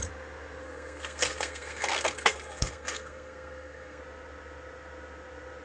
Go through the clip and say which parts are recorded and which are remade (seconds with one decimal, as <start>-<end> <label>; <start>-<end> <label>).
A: 0.0-0.6 recorded; 0.6-4.0 remade; 4.0-5.6 recorded